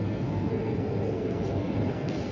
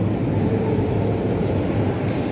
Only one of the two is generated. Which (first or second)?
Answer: first